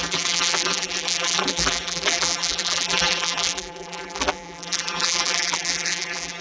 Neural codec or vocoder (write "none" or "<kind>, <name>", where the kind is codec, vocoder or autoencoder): vocoder, BigVGAN v2